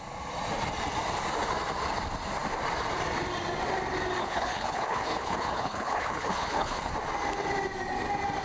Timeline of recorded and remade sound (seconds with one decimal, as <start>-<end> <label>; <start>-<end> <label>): 0.0-4.2 recorded; 4.2-6.9 remade; 6.9-8.4 recorded